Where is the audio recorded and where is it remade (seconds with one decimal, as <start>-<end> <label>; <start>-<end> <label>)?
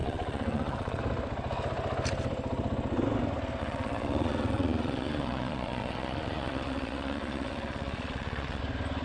0.0-1.0 remade; 1.0-3.6 recorded; 3.6-8.6 remade; 8.6-9.0 recorded